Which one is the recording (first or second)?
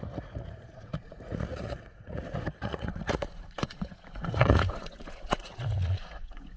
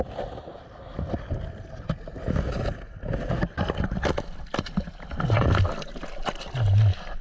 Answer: second